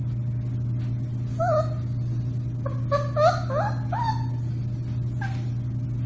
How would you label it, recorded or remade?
recorded